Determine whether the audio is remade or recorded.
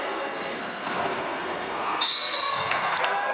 remade